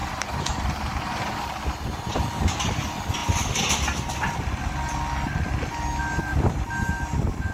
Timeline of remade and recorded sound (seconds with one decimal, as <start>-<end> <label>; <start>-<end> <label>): 0.0-2.4 remade; 2.4-7.5 recorded